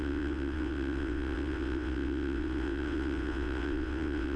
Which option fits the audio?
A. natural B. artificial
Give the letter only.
B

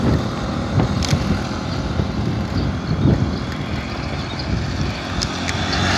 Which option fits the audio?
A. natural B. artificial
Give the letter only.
A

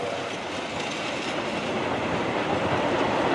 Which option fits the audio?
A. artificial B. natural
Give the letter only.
B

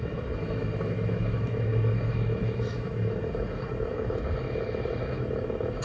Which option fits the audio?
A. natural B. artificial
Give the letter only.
B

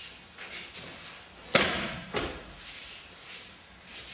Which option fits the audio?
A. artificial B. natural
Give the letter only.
B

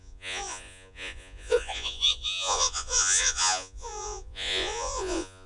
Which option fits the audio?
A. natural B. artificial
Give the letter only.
B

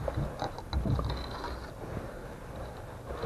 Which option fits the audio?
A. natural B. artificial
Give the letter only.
A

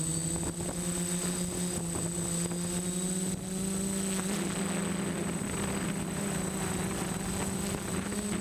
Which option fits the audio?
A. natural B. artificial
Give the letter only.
A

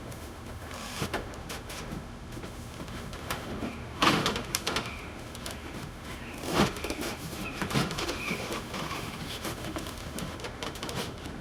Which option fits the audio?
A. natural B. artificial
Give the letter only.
B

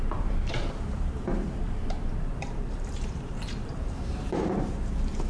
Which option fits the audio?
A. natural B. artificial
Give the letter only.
B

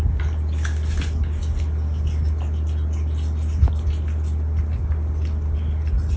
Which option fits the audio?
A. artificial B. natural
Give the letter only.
B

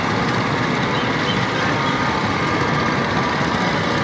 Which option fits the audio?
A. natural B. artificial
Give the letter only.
A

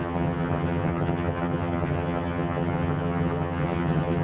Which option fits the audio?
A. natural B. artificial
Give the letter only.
B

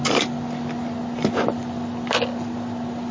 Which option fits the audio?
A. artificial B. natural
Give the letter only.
B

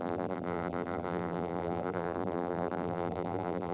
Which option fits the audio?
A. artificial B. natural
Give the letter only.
A